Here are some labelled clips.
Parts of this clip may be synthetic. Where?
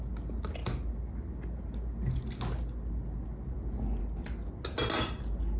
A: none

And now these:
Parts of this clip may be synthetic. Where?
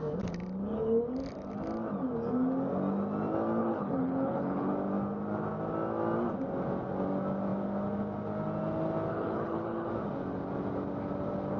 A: 3.6-4.7 (codec, HILCodec); 9.1-9.9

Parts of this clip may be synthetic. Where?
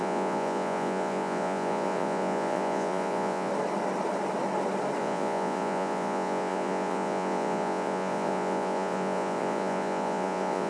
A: 0.0-3.5 (vocoder, Vocos); 5.0-10.7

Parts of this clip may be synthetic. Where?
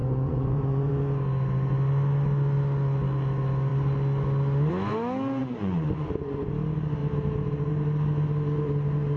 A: 0.0-0.9 (vocoder, Vocos); 5.4-6.5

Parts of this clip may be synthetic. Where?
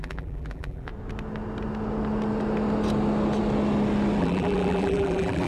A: 0.0-0.9 (vocoder, BigVGAN v2); 4.2-5.5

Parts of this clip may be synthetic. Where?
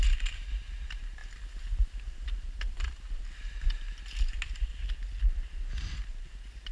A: 1.2-5.0 (vocoder, BigVGAN v2)